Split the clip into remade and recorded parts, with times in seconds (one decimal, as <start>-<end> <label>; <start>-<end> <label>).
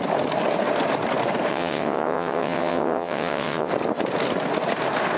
0.0-1.5 recorded; 1.5-3.7 remade; 3.7-5.2 recorded